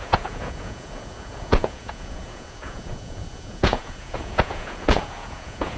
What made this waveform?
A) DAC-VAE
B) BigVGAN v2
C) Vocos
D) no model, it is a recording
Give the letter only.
C